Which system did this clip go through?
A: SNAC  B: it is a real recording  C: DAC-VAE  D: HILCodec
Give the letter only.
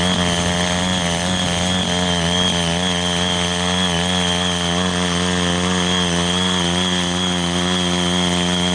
B